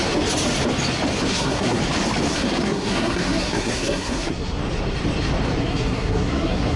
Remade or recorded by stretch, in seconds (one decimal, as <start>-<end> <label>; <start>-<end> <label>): 0.0-1.3 recorded; 1.3-1.8 remade; 1.8-2.3 recorded; 2.3-4.6 remade; 4.6-5.6 recorded; 5.6-6.8 remade

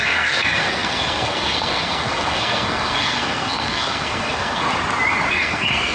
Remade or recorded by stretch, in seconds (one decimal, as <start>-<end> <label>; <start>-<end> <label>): 0.0-4.7 remade; 4.7-5.3 recorded; 5.3-5.9 remade